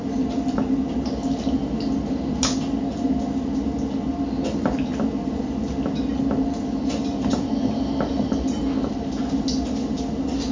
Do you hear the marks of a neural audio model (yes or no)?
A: no